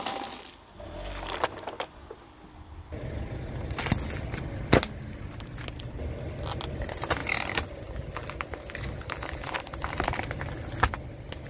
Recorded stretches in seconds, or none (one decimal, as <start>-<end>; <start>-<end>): 0.0-11.5